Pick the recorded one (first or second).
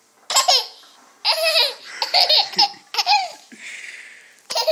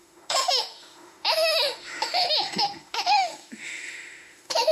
first